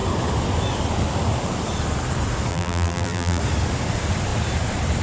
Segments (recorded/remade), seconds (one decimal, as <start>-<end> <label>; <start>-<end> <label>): 0.0-2.5 recorded; 2.5-3.4 remade; 3.4-5.0 recorded